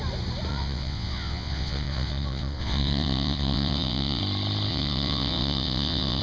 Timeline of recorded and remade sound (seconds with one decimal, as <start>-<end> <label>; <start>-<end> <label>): 0.0-0.5 recorded; 0.5-4.2 remade; 4.2-4.7 recorded; 4.7-6.2 remade

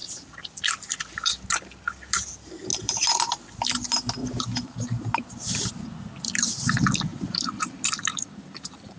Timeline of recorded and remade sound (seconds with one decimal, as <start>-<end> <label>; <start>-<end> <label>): 0.0-4.2 recorded; 4.2-5.7 remade; 5.7-7.1 recorded; 7.1-9.0 remade

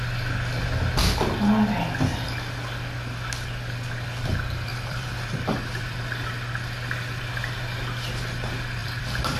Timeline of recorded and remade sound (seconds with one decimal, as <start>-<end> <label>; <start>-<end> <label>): 0.0-4.7 recorded; 4.7-6.0 remade; 6.0-8.8 recorded; 8.8-9.4 remade

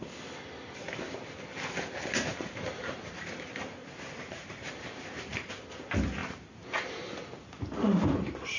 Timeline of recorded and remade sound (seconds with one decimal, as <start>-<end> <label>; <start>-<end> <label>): 0.0-2.3 recorded; 2.3-5.5 remade; 5.5-6.2 recorded; 6.2-7.2 remade; 7.2-8.6 recorded